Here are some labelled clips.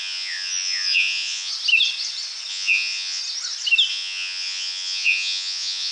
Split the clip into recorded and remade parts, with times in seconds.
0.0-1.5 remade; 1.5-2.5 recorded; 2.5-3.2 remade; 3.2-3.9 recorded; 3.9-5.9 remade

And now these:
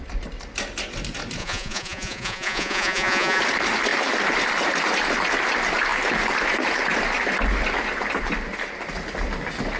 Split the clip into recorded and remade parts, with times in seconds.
0.0-1.4 recorded; 1.4-3.4 remade; 3.4-9.8 recorded